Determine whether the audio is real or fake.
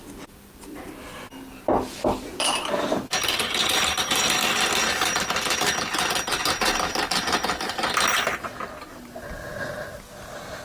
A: real